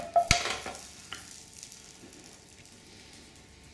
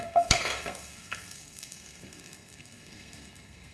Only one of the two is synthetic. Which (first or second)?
second